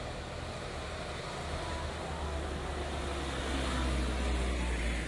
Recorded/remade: recorded